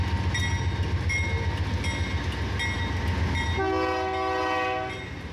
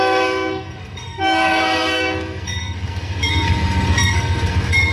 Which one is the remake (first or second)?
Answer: second